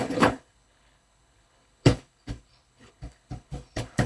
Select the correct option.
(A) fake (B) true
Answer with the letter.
A